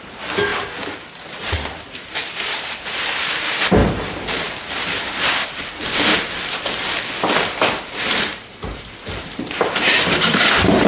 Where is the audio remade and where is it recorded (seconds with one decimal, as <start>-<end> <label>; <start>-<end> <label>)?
0.0-6.1 remade; 6.1-8.0 recorded; 8.0-10.9 remade